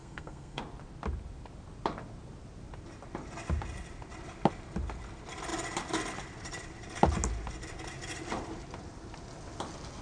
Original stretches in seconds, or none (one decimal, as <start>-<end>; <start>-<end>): 0.6-10.0